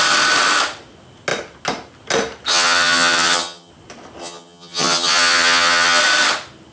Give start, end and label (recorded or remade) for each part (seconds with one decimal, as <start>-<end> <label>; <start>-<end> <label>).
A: 0.0-2.5 recorded; 2.5-3.7 remade; 3.7-4.2 recorded; 4.2-6.0 remade; 6.0-6.7 recorded